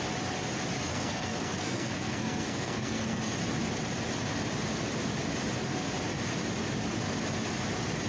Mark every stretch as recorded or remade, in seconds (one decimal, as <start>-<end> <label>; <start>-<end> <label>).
0.0-0.9 recorded; 0.9-3.2 remade; 3.2-8.1 recorded